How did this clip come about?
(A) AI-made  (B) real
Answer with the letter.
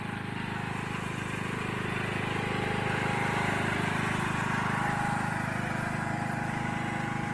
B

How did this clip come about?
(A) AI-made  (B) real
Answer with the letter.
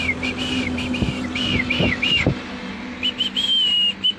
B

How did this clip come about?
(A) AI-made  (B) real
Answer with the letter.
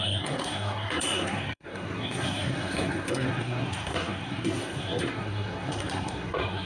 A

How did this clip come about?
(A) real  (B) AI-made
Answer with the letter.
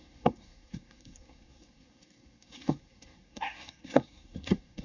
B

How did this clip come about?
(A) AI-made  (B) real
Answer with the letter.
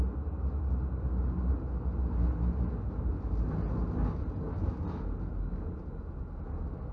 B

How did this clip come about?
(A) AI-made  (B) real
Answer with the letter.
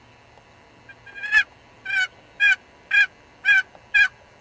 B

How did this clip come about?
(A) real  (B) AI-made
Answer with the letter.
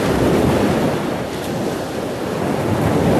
A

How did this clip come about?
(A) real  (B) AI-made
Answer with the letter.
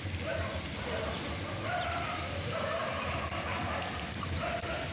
A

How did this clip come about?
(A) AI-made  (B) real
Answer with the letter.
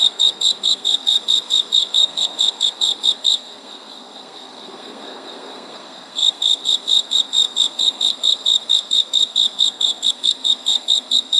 A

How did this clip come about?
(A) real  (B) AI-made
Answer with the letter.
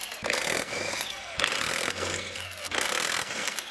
B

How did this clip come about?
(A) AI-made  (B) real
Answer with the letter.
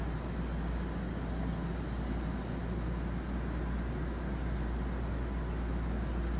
B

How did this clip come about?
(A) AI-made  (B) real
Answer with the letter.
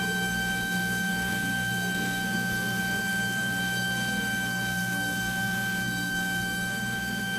A